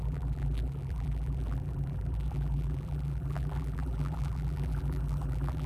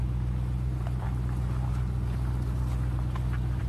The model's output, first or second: first